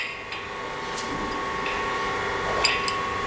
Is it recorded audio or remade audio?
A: recorded